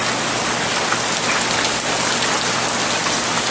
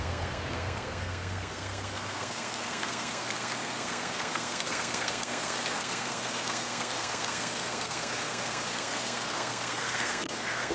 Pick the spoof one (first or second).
second